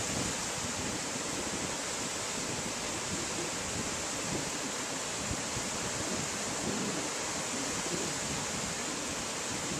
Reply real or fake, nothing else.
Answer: real